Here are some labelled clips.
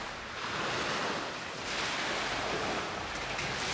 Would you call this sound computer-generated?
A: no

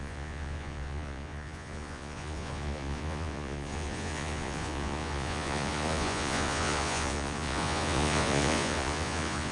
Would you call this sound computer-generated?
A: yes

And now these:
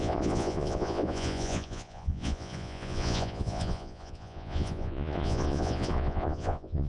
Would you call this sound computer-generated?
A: yes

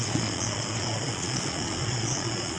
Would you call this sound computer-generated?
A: yes